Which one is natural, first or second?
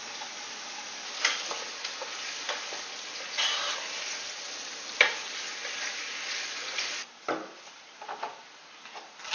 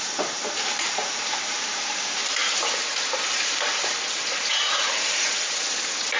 first